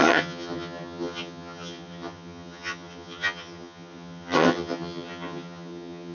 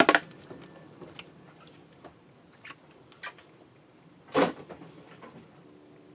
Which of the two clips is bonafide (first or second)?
second